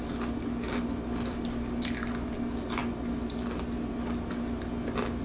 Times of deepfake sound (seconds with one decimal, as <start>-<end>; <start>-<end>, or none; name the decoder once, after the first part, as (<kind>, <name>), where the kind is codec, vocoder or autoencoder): none